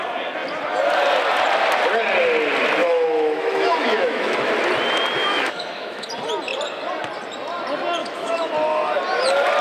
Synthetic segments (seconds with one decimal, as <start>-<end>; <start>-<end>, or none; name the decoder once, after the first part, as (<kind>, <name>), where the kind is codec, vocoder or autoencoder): 2.8-4.5 (autoencoder, DAC-VAE); 5.2-6.1; 8.0-8.5